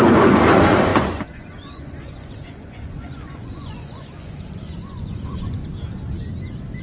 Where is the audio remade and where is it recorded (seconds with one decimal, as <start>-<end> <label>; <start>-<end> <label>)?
0.0-5.6 remade; 5.6-6.8 recorded